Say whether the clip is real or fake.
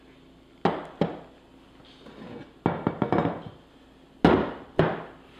real